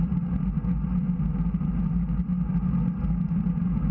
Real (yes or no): yes